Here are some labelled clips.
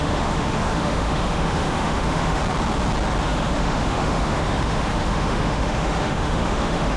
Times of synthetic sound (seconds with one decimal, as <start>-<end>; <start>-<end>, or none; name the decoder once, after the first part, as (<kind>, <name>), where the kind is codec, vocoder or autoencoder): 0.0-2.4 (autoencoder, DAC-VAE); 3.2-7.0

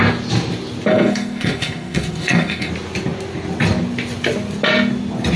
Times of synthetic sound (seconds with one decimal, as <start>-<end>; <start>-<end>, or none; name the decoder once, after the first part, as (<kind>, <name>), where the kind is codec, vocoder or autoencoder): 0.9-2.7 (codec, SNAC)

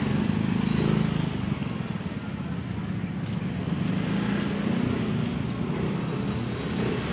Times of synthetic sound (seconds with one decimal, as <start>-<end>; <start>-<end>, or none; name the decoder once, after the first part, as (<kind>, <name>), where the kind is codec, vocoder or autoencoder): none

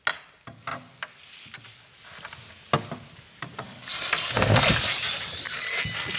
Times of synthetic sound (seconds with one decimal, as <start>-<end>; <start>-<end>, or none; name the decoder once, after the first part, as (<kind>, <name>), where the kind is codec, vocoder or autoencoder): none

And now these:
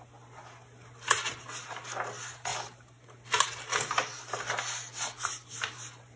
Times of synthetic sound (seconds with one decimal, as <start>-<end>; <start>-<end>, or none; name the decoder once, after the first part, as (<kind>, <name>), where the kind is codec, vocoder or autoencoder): none

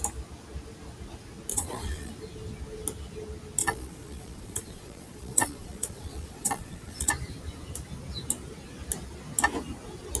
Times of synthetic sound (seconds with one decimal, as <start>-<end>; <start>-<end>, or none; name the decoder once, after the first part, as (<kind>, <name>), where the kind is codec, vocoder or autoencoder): 1.5-2.1 (vocoder, Vocos); 3.6-7.1